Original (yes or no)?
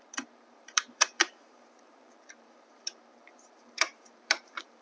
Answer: no